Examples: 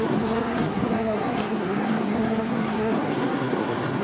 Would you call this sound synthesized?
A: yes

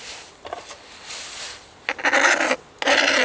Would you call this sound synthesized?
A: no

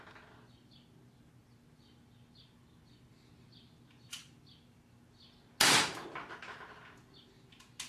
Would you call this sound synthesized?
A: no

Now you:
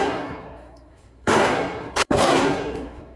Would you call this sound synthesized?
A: yes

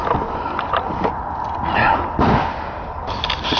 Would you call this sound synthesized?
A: no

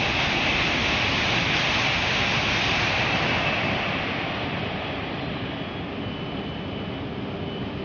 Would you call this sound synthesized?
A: no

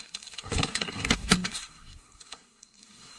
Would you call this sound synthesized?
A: yes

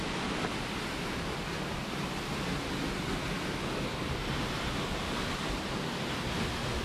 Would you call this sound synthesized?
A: no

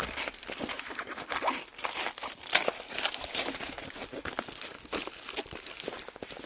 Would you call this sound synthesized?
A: no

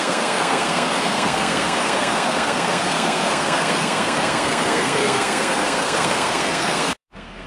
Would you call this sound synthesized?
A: yes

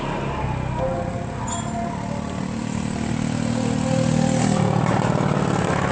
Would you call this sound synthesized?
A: no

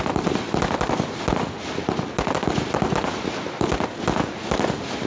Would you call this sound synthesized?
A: no